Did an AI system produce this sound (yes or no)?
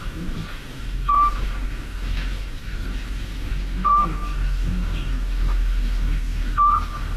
yes